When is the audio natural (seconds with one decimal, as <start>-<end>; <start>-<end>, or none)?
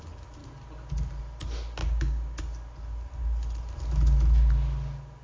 0.0-1.8; 2.4-5.2